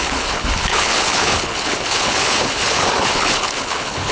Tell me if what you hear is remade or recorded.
remade